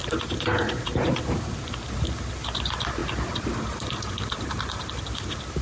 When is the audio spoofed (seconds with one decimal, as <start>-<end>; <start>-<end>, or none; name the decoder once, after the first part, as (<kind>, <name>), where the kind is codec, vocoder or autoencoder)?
none